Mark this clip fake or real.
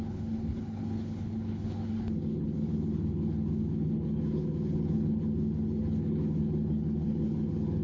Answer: fake